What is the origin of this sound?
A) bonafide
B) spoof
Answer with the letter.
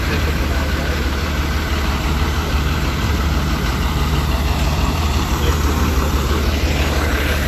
B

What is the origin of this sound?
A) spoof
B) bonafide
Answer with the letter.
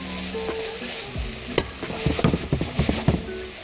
B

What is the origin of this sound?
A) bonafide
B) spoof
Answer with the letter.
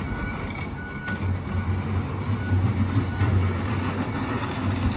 A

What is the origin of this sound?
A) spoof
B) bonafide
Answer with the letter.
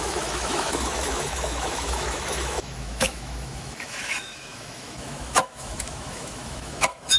A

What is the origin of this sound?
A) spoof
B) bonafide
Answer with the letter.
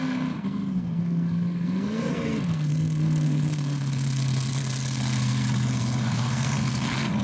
A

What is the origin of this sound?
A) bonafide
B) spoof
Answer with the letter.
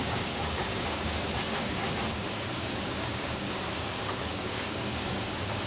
B